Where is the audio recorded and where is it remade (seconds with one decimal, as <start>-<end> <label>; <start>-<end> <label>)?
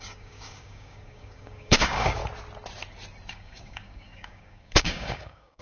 0.0-2.2 remade; 2.2-3.3 recorded; 3.3-5.6 remade